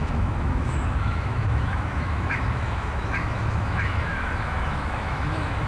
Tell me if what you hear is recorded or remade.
remade